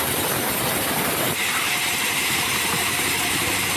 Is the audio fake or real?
fake